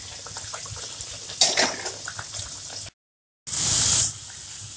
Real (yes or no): yes